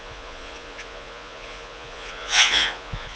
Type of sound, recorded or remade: remade